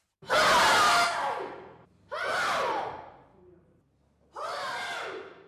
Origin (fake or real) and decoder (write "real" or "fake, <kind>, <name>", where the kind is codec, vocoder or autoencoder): real